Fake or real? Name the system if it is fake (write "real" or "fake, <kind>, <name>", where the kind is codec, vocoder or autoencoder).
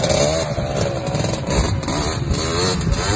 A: real